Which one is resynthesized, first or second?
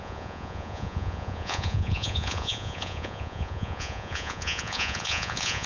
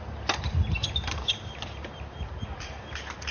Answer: first